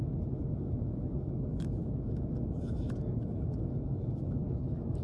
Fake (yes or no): yes